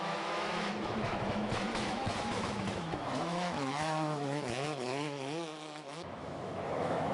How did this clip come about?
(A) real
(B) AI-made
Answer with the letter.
B